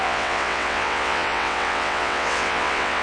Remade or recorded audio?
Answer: remade